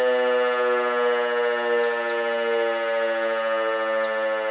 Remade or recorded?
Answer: recorded